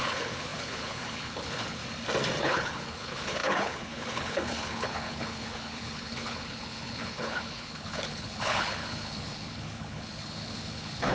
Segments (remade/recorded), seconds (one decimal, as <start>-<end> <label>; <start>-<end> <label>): 0.0-1.8 remade; 1.8-2.4 recorded; 2.4-11.1 remade